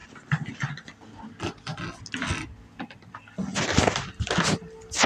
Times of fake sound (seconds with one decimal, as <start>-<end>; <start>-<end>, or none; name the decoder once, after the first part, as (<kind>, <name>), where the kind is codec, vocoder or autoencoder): 0.0-0.7 (vocoder, BigVGAN v2)